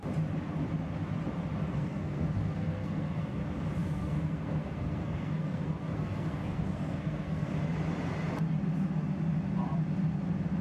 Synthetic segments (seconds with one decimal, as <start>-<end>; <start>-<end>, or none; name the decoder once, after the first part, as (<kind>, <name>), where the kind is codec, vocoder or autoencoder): 1.6-3.4 (codec, SNAC); 3.8-7.5